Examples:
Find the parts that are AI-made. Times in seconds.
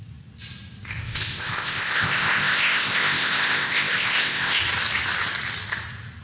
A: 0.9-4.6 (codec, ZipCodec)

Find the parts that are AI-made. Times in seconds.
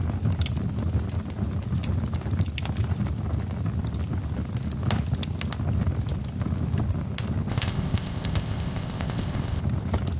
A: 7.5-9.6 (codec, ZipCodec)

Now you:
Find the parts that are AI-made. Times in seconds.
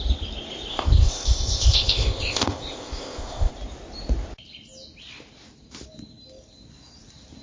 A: 0.7-3.5 (codec, ZipCodec)